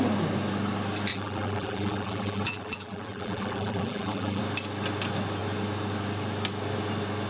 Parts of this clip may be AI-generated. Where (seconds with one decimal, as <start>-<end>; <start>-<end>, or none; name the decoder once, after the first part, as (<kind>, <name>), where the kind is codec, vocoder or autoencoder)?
1.1-4.4 (vocoder, BigVGAN v2)

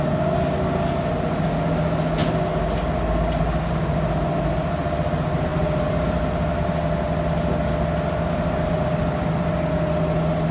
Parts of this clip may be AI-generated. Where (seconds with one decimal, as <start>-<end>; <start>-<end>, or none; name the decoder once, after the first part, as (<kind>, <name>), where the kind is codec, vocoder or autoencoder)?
5.5-6.3 (vocoder, BigVGAN v2)

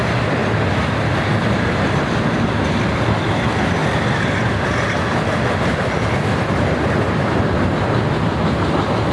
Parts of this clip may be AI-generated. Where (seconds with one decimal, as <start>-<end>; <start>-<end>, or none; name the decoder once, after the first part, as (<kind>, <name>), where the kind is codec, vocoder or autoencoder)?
0.4-2.2 (vocoder, BigVGAN v2); 3.8-9.1

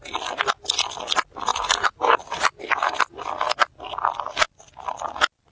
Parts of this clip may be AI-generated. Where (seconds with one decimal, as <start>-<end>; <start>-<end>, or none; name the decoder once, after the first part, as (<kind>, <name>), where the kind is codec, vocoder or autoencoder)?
1.5-3.0 (vocoder, BigVGAN v2)

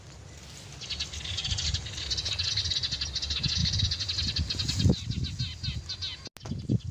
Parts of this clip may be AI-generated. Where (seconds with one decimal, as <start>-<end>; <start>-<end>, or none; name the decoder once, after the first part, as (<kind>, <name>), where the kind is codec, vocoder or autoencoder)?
none